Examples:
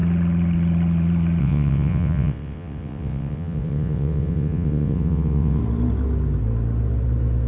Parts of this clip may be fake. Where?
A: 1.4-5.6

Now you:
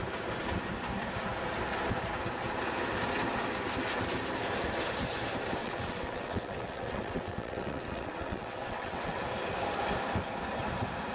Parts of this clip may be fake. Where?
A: 5.6-9.2

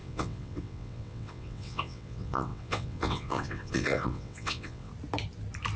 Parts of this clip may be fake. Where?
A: 0.0-4.9

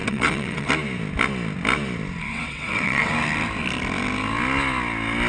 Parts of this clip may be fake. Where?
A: 0.0-0.7; 2.3-3.1

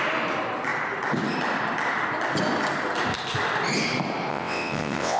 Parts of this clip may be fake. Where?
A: 4.3-5.2

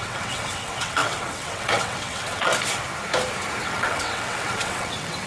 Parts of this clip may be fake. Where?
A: 0.0-2.5; 3.6-5.3

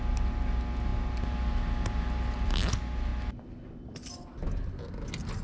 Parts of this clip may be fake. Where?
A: none